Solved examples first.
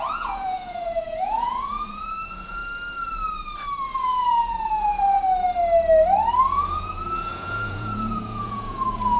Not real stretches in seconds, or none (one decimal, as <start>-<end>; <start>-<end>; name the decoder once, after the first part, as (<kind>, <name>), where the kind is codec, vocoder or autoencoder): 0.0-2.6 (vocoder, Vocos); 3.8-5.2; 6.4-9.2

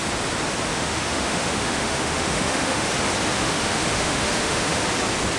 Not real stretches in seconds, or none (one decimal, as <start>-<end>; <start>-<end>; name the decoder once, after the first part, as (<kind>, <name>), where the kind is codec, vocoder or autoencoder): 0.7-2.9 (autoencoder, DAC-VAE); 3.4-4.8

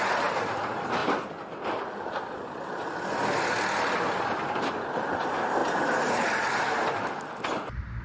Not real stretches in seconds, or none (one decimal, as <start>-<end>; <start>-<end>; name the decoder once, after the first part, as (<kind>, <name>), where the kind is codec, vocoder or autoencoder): none

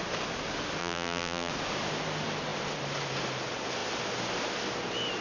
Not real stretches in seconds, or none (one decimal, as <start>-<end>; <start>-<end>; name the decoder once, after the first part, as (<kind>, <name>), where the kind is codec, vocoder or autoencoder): 0.8-1.5 (vocoder, BigVGAN v2)

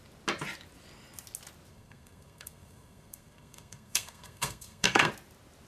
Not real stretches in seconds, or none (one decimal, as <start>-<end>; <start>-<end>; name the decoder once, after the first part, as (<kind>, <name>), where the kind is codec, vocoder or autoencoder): 1.7-5.1 (codec, SNAC)